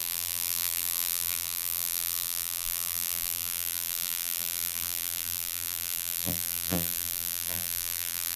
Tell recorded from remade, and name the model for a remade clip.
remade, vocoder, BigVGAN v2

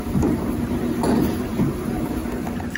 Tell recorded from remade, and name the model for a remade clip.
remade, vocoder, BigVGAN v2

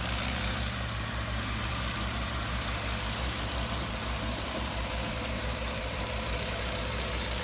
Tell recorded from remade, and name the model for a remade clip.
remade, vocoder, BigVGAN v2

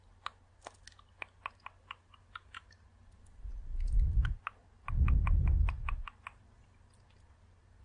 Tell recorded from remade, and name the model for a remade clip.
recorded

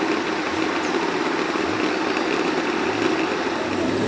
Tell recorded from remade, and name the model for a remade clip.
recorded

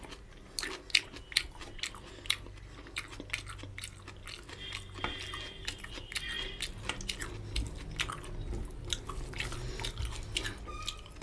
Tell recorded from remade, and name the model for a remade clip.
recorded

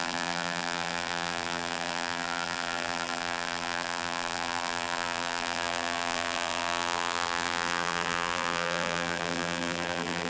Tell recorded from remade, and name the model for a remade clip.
remade, vocoder, BigVGAN v2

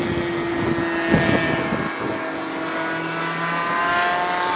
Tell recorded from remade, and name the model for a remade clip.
recorded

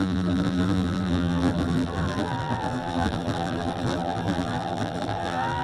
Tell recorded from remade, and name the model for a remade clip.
remade, vocoder, BigVGAN v2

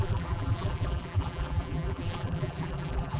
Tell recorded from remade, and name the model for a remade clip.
remade, vocoder, BigVGAN v2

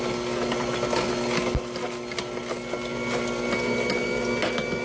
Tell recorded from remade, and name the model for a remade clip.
recorded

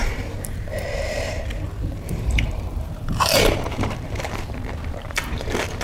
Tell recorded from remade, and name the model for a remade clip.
remade, vocoder, BigVGAN v2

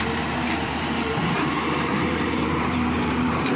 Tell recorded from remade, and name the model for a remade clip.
remade, vocoder, BigVGAN v2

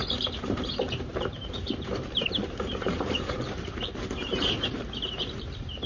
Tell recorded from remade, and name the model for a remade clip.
remade, vocoder, BigVGAN v2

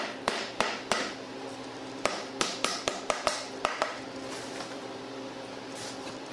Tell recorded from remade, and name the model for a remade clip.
remade, vocoder, BigVGAN v2